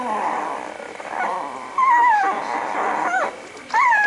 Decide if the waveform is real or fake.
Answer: real